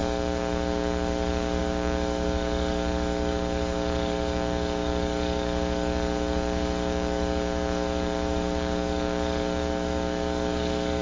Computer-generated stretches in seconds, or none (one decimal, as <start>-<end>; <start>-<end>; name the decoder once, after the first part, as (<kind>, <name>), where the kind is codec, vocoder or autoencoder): 0.0-11.0 (codec, DAC)